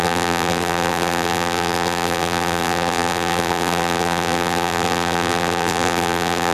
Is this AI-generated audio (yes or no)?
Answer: yes